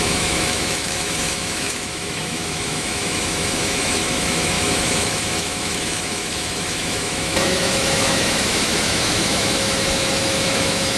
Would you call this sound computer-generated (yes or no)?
yes